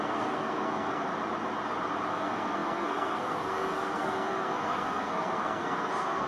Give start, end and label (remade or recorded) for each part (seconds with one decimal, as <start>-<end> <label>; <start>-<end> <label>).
0.0-1.1 remade; 1.1-2.1 recorded; 2.1-6.3 remade